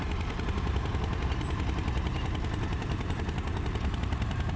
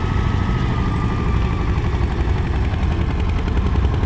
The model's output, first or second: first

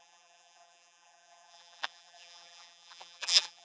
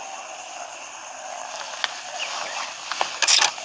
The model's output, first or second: first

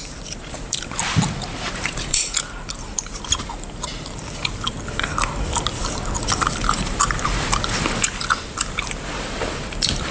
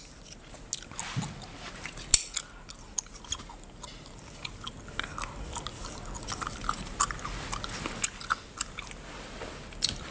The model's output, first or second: first